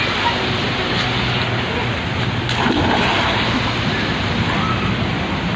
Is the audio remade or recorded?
recorded